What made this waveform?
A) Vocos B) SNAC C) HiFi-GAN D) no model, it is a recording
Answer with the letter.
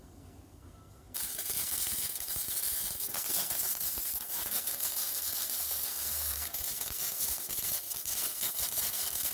B